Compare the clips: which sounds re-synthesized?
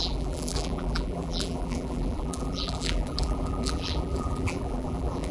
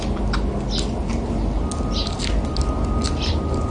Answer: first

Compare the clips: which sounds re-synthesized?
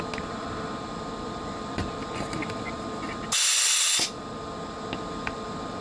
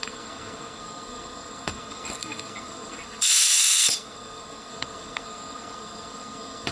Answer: second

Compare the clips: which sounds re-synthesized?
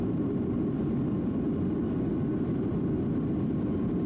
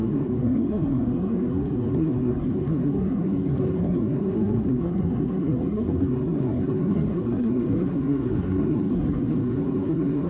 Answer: second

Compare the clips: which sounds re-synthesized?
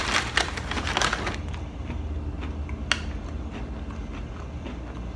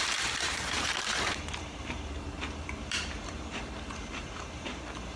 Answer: second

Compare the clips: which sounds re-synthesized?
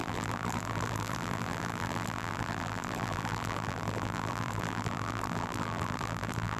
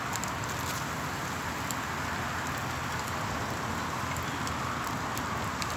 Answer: first